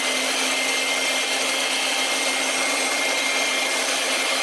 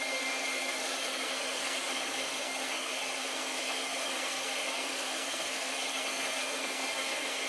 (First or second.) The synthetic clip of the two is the second